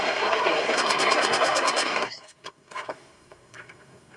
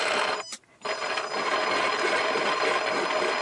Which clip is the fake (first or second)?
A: first